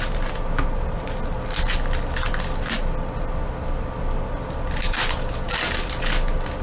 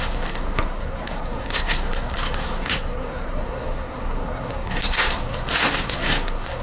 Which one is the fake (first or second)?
second